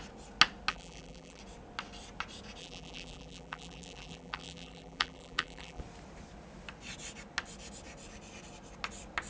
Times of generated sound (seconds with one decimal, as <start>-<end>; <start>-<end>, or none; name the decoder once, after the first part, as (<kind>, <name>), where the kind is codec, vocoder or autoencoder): 0.7-1.4 (vocoder, BigVGAN v2); 2.6-5.8